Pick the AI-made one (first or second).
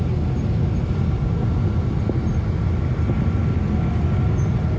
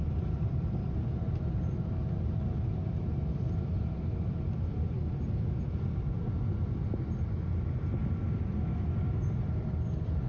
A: second